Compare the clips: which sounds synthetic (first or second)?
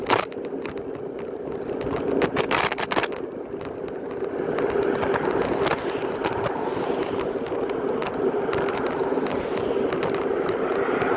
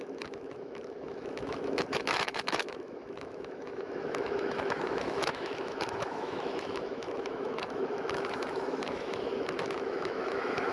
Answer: second